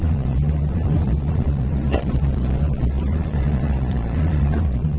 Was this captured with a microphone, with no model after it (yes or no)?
no